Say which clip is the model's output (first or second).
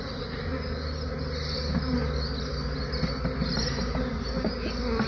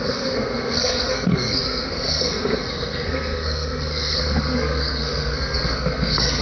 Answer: second